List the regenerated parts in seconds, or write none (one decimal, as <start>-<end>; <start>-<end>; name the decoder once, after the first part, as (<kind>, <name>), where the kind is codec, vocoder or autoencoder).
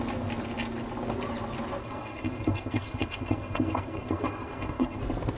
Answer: 1.8-5.0 (codec, SNAC)